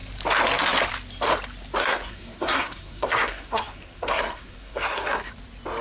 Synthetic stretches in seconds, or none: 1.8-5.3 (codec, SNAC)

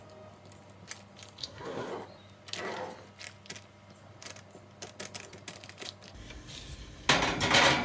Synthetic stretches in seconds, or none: 1.4-1.9 (codec, SNAC)

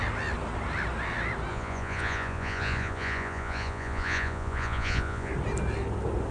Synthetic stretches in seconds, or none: 1.5-5.3 (vocoder, Vocos)